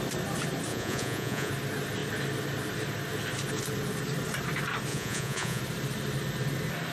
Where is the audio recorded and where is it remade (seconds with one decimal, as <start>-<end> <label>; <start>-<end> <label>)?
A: 0.0-0.7 recorded; 0.7-1.5 remade; 1.5-4.9 recorded; 4.9-5.6 remade; 5.6-6.9 recorded